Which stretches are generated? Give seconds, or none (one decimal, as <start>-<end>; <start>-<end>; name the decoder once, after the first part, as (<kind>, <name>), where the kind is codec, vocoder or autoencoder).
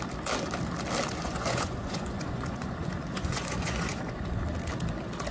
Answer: 1.2-4.4 (vocoder, Vocos)